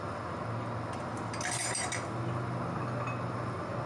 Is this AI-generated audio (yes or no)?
no